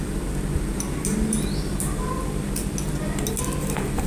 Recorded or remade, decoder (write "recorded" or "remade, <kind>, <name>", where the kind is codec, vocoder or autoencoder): recorded